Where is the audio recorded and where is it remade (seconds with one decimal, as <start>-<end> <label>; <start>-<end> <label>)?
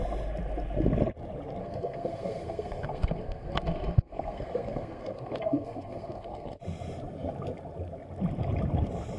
0.0-1.6 recorded; 1.6-6.6 remade; 6.6-9.2 recorded